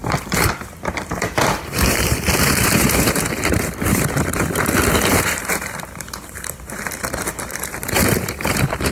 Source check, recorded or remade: remade